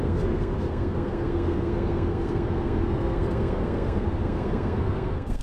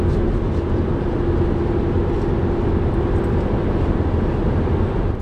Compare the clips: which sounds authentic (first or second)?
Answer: second